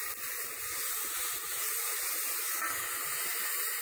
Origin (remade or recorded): recorded